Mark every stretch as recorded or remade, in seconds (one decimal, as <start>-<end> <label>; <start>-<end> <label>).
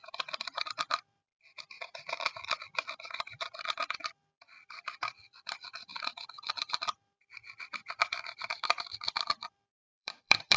0.0-1.3 remade; 1.3-1.8 recorded; 1.8-5.9 remade; 5.9-6.5 recorded; 6.5-10.6 remade